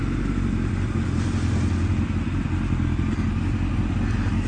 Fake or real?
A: real